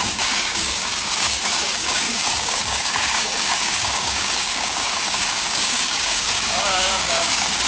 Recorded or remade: remade